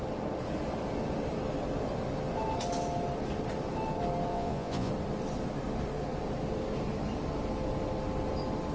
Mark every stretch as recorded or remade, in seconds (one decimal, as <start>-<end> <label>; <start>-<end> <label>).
0.0-4.3 recorded; 4.3-4.9 remade; 4.9-8.7 recorded